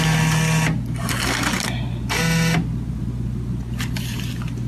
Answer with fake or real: real